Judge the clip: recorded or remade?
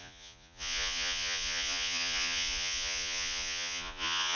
remade